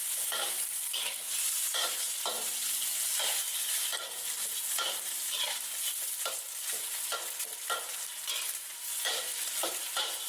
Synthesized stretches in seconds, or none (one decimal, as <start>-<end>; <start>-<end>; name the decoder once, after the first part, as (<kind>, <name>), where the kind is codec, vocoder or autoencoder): 0.0-0.8 (vocoder, BigVGAN v2); 3.0-4.2; 9.3-10.3